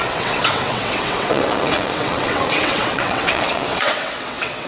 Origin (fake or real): fake